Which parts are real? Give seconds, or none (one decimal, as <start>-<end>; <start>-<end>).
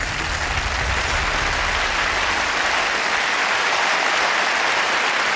0.0-5.4